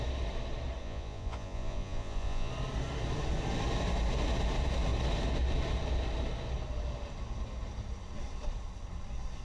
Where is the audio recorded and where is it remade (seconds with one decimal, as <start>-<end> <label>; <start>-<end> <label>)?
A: 0.0-0.8 recorded; 0.8-2.5 remade; 2.5-9.4 recorded